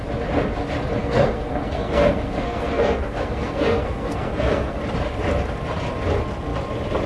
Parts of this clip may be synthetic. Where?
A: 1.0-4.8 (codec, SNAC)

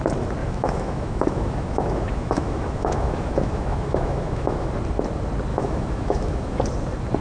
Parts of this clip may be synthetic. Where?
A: 0.4-4.7 (autoencoder, DAC-VAE); 5.5-6.6

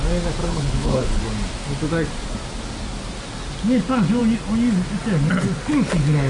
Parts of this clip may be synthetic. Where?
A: 0.4-1.2 (codec, HILCodec)

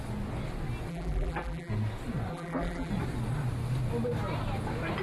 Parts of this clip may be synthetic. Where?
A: 0.9-1.7 (vocoder, BigVGAN v2); 2.3-2.9

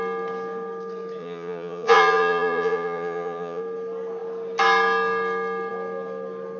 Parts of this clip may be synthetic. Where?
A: 1.2-3.6 (vocoder, Vocos)

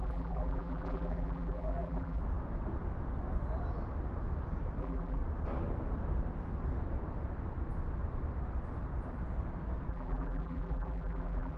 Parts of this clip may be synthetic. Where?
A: 0.0-2.2 (vocoder, BigVGAN v2); 4.8-5.2; 9.9-11.6

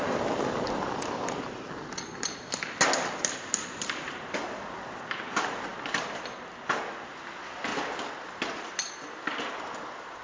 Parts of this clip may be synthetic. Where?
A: none